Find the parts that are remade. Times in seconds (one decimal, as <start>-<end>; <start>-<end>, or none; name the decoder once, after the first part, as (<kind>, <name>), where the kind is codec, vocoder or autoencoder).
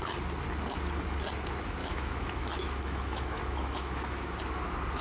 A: 1.8-4.4 (autoencoder, DAC-VAE)